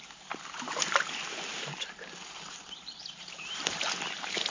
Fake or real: real